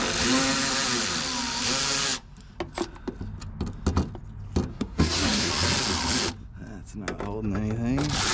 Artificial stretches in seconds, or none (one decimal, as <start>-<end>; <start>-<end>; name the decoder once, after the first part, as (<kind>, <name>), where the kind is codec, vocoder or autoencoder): 4.7-5.5 (codec, SNAC)